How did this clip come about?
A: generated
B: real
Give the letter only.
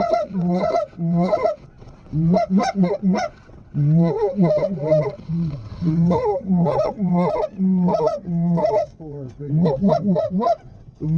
A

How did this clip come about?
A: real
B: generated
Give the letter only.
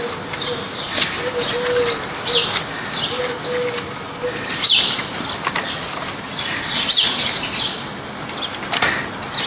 A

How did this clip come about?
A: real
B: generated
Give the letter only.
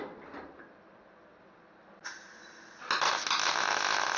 A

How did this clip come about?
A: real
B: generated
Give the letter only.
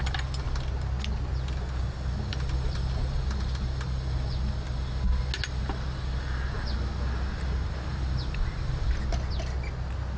A